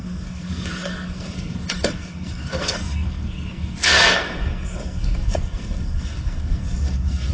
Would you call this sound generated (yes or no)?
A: yes